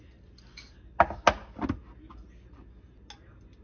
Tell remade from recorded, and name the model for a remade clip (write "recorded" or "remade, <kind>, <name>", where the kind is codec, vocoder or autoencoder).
recorded